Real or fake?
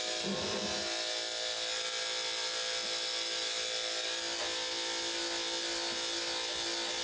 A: real